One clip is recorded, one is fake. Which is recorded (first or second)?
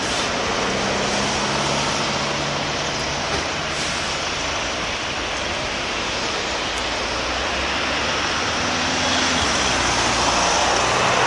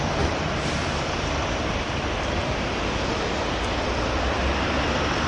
first